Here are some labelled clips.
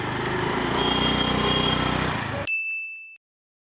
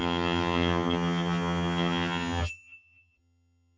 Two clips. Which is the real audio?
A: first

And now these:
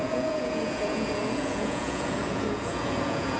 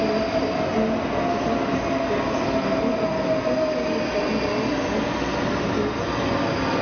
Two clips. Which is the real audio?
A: second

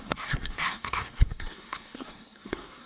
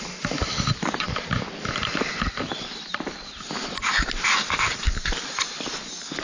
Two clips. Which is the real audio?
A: second